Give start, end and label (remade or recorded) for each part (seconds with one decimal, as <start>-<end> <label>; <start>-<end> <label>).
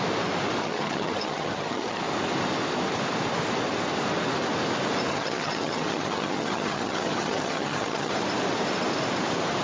0.0-0.6 recorded; 0.6-2.0 remade; 2.0-5.1 recorded; 5.1-8.1 remade; 8.1-9.6 recorded